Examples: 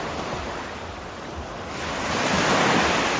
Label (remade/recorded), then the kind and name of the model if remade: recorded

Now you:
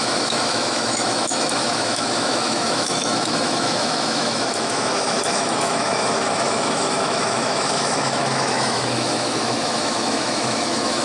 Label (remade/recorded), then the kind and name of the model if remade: remade, autoencoder, DAC-VAE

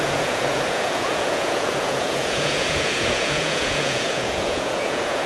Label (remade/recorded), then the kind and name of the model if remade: remade, vocoder, Vocos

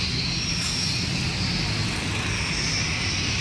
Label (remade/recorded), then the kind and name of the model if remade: recorded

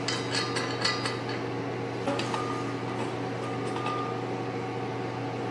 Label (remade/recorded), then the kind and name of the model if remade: recorded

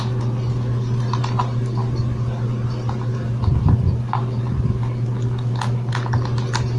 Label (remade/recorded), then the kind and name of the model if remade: recorded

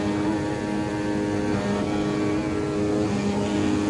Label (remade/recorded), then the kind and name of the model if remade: recorded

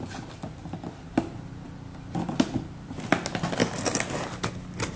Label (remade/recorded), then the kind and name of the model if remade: recorded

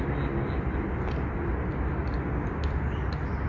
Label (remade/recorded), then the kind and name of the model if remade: recorded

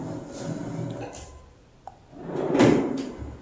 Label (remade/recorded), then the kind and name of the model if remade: recorded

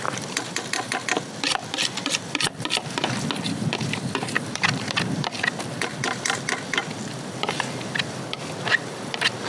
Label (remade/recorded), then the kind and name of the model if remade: remade, vocoder, BigVGAN v2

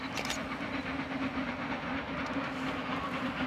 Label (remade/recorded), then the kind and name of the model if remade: recorded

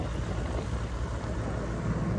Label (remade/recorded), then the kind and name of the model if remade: recorded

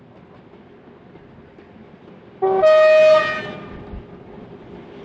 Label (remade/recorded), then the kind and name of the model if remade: recorded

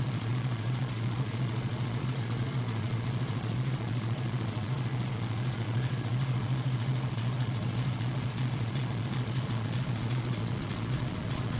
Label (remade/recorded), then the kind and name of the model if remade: remade, vocoder, Vocos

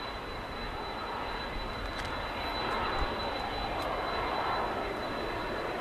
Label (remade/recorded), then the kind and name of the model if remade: recorded